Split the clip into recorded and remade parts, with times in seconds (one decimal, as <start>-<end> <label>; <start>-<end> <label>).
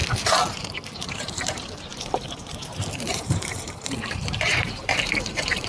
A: 0.0-1.0 recorded; 1.0-5.7 remade